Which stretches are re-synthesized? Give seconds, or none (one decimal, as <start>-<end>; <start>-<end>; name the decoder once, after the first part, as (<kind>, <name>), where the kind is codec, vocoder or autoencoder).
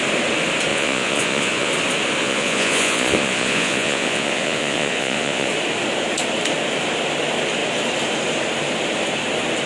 0.7-1.7 (vocoder, Vocos); 2.2-5.5